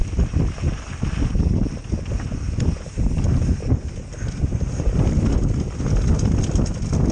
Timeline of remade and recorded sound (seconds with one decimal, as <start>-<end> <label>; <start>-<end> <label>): 0.0-7.1 recorded